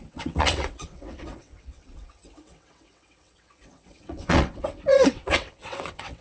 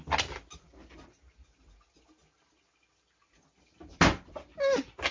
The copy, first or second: first